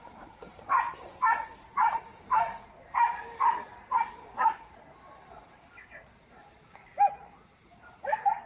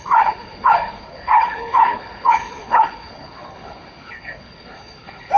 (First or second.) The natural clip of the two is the first